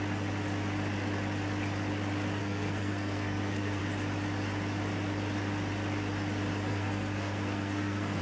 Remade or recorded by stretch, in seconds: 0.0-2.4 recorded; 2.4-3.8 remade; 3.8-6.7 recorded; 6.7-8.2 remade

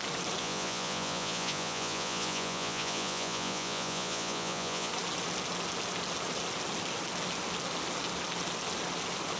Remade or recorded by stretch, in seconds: 0.0-0.4 recorded; 0.4-4.9 remade; 4.9-9.4 recorded

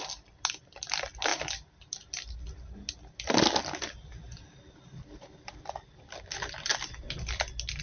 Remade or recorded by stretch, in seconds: 0.0-7.8 recorded

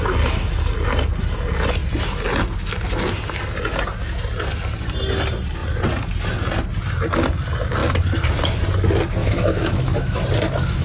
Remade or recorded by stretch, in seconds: 0.0-9.2 recorded; 9.2-10.2 remade; 10.2-10.8 recorded

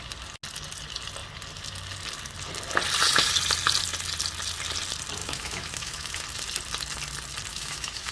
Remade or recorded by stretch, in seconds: 0.0-5.2 recorded; 5.2-6.2 remade; 6.2-7.5 recorded; 7.5-8.1 remade

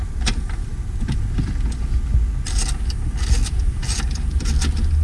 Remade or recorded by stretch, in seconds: 0.0-0.7 remade; 0.7-3.6 recorded; 3.6-5.0 remade

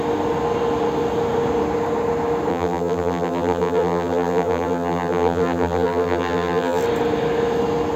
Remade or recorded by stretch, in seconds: 0.0-2.5 recorded; 2.5-6.8 remade; 6.8-8.0 recorded

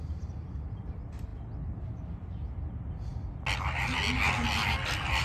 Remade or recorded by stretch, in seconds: 0.0-5.2 recorded